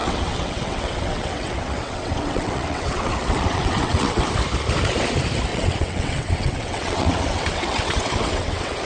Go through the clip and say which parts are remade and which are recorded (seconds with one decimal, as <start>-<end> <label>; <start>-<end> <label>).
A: 0.0-4.3 remade; 4.3-5.5 recorded; 5.5-8.8 remade